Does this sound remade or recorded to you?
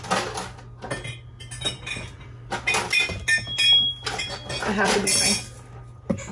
recorded